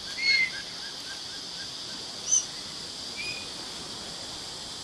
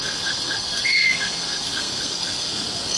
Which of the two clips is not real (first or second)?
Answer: second